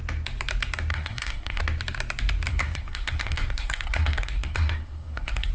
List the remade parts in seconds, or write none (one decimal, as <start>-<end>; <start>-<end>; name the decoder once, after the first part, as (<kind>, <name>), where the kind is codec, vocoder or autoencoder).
0.9-1.6 (codec, SNAC); 2.5-5.5